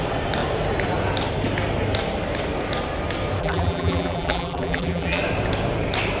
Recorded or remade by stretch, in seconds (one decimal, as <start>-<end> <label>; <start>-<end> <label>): 0.0-3.4 recorded; 3.4-5.2 remade; 5.2-6.2 recorded